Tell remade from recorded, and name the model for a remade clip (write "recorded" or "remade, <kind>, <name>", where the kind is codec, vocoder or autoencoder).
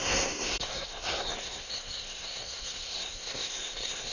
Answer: remade, codec, SNAC